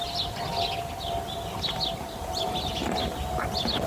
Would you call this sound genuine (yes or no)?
yes